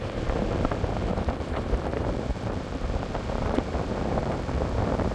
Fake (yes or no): yes